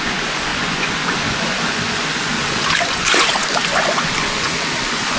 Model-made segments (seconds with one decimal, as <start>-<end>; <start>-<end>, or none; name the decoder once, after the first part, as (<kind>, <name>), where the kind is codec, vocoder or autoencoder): 0.0-5.2 (vocoder, Vocos)